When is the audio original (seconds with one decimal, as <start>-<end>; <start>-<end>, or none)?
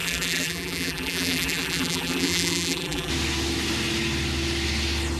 3.1-5.2